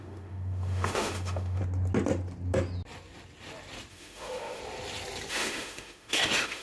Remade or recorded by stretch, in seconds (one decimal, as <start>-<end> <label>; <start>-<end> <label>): 0.0-1.6 remade; 1.6-3.9 recorded; 3.9-4.6 remade; 4.6-5.3 recorded; 5.3-6.6 remade

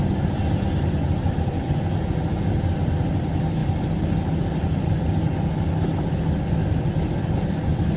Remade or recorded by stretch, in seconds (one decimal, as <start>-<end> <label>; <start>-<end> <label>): 0.0-8.0 recorded